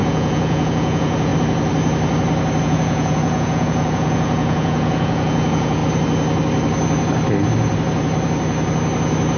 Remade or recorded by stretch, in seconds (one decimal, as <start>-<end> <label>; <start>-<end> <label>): 0.0-1.3 remade; 1.3-2.6 recorded; 2.6-5.8 remade; 5.8-9.4 recorded